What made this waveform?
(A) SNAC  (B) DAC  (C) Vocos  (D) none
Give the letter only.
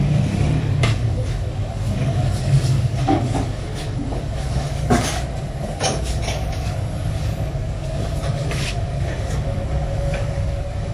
B